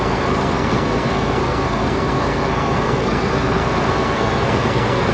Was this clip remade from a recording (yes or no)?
yes